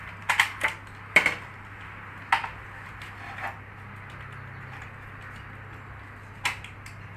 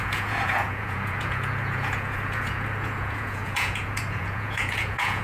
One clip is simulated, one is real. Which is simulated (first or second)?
second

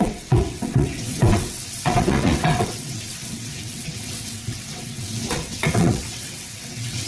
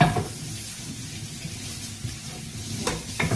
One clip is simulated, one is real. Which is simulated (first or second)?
first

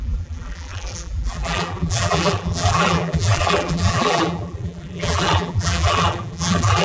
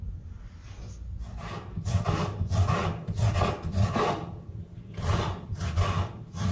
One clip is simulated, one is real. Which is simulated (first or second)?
first